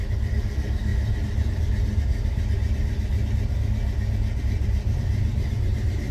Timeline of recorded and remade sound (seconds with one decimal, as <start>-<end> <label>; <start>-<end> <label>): 0.0-3.1 remade; 3.1-4.4 recorded; 4.4-6.1 remade